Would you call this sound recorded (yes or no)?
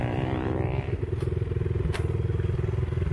yes